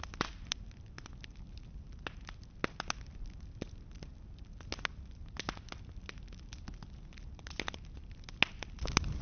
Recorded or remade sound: recorded